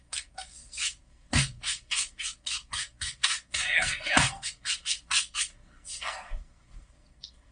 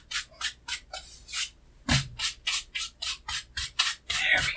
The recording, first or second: second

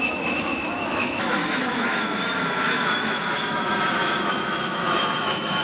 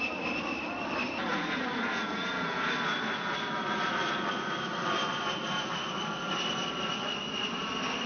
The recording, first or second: second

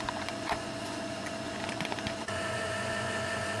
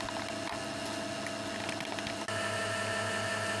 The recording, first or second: second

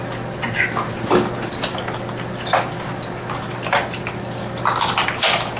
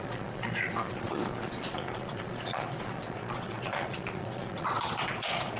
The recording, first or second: first